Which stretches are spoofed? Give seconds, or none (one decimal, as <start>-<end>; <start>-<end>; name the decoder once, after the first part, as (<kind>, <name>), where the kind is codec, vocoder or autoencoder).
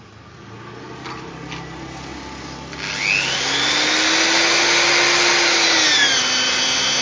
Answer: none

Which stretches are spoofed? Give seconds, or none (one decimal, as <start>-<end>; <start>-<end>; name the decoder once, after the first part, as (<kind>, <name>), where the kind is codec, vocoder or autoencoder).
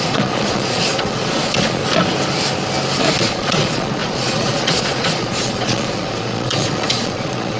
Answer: 0.0-1.8 (vocoder, Vocos); 3.0-7.6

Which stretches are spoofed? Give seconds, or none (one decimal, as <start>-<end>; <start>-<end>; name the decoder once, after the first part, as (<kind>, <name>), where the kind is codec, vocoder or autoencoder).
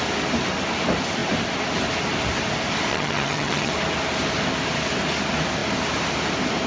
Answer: 2.9-3.7 (vocoder, HiFi-GAN)